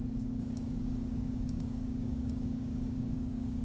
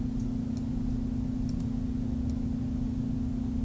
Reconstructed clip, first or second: first